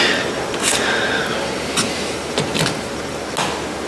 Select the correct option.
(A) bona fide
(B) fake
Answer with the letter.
A